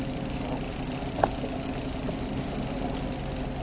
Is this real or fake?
real